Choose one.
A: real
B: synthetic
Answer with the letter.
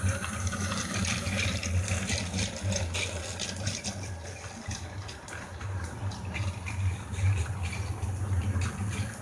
A